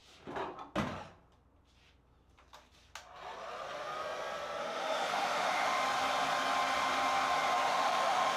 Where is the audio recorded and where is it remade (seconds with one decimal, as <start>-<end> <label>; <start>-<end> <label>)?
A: 0.0-4.6 recorded; 4.6-5.8 remade; 5.8-7.7 recorded; 7.7-8.4 remade